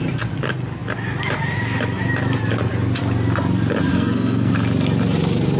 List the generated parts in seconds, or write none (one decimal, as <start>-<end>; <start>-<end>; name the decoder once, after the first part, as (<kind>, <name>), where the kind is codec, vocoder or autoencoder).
3.9-4.5 (codec, SNAC)